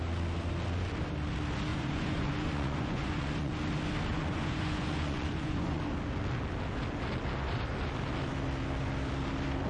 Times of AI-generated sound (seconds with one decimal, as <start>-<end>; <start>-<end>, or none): 1.7-3.5; 4.1-5.8